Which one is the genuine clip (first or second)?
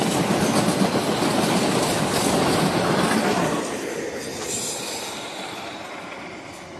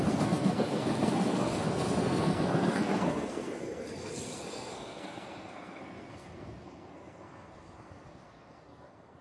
first